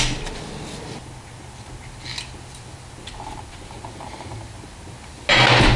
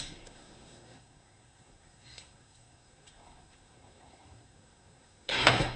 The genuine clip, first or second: first